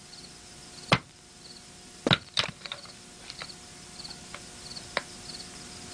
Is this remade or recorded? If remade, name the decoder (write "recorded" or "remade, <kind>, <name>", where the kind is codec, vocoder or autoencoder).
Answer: recorded